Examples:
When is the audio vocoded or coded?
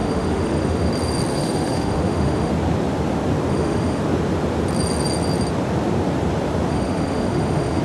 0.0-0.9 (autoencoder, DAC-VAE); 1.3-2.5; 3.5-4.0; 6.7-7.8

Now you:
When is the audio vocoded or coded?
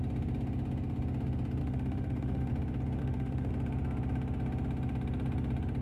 1.6-2.5 (autoencoder, DAC-VAE); 3.0-3.5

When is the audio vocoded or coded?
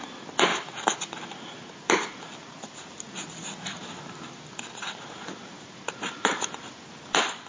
none